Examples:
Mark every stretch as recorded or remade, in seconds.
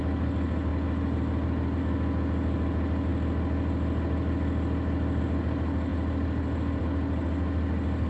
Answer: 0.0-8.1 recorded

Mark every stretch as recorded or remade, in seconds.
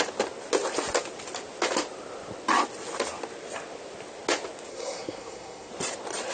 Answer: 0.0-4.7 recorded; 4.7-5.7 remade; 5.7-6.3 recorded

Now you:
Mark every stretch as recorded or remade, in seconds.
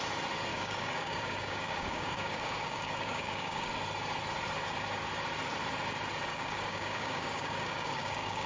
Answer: 0.0-0.5 recorded; 0.5-3.7 remade; 3.7-6.3 recorded; 6.3-8.5 remade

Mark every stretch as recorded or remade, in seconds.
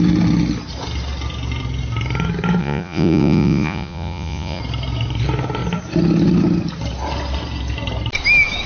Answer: 0.0-2.6 recorded; 2.6-4.6 remade; 4.6-8.7 recorded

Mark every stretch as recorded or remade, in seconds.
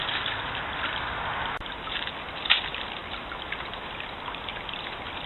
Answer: 0.0-5.3 recorded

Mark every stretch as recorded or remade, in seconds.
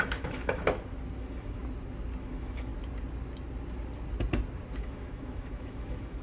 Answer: 0.0-0.6 remade; 0.6-1.2 recorded; 1.2-1.6 remade; 1.6-2.2 recorded; 2.2-2.7 remade; 2.7-4.8 recorded; 4.8-6.2 remade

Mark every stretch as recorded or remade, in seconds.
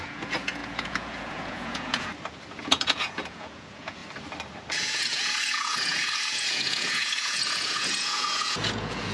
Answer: 0.0-2.1 remade; 2.1-2.6 recorded; 2.6-4.0 remade; 4.0-4.7 recorded; 4.7-9.1 remade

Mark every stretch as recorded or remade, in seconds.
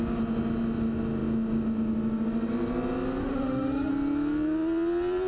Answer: 0.0-3.2 recorded; 3.2-3.9 remade; 3.9-5.3 recorded